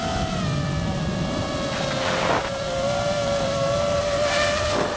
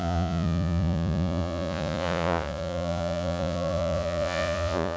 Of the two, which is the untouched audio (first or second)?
first